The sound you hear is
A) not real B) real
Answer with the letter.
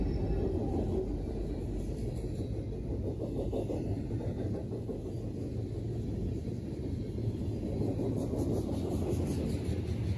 B